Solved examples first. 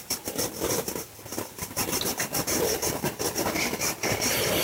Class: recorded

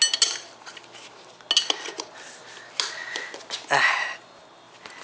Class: recorded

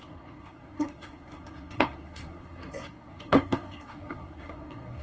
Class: remade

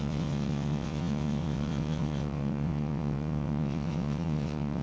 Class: remade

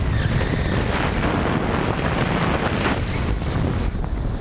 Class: recorded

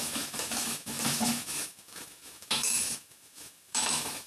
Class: remade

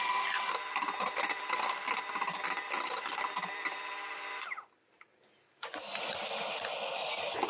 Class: remade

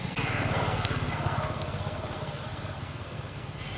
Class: remade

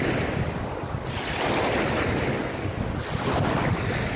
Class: recorded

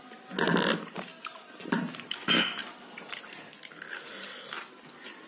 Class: recorded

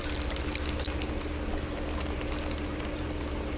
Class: recorded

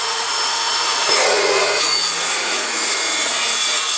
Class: remade